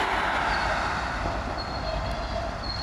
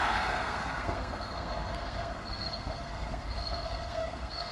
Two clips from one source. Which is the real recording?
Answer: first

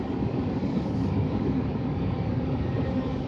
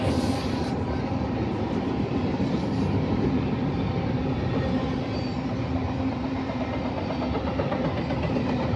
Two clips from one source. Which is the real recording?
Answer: second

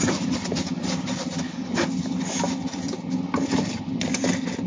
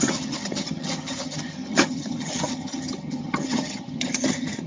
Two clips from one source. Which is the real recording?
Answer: first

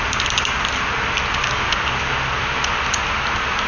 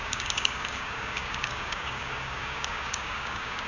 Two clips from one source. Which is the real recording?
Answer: first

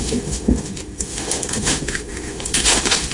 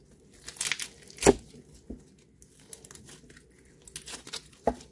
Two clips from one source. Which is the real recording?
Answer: second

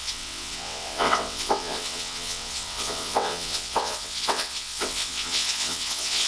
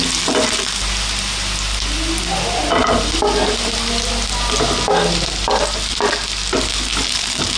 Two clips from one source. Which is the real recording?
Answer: second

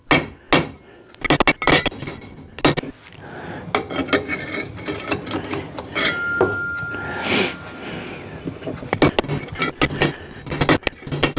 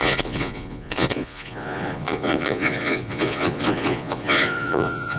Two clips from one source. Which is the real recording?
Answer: first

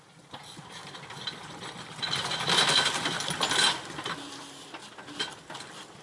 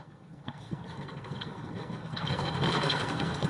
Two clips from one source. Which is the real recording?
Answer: first